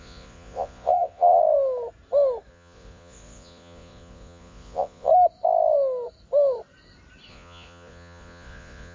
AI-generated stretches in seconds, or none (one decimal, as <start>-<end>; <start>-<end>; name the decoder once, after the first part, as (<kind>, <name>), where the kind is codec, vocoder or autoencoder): 0.0-1.4 (vocoder, Vocos); 2.5-5.1; 7.3-8.9